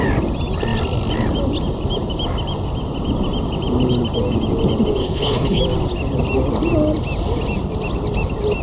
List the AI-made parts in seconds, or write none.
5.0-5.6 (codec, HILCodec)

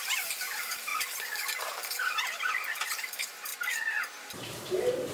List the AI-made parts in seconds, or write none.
0.0-0.9 (vocoder, BigVGAN v2); 1.6-3.5; 4.0-5.1